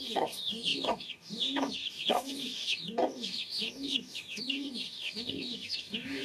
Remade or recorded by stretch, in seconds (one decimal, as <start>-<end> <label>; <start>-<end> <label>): 0.0-6.2 remade